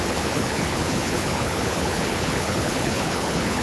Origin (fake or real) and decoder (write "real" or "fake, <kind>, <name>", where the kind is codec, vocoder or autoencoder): fake, codec, HILCodec